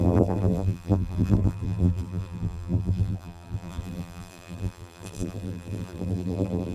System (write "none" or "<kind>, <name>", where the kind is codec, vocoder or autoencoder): vocoder, BigVGAN v2